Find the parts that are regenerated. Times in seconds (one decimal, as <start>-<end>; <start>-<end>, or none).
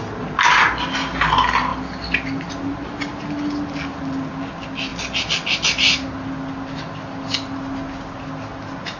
none